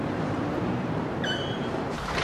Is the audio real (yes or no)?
no